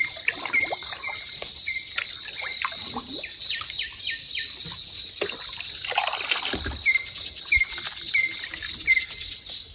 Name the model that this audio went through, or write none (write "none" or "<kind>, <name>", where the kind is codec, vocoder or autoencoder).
none